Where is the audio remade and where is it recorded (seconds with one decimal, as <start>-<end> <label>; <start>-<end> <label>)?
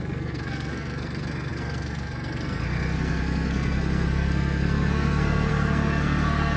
0.0-6.6 remade